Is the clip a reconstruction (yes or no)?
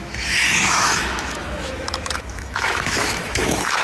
yes